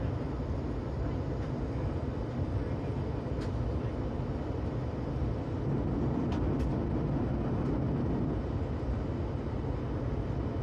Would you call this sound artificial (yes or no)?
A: no